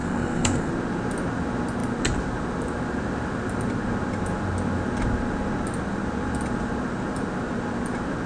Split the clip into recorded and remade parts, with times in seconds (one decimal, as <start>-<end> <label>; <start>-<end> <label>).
0.0-0.7 remade; 0.7-8.3 recorded